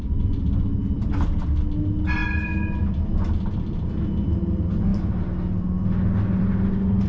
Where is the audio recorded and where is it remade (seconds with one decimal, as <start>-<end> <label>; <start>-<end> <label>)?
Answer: 0.0-7.1 recorded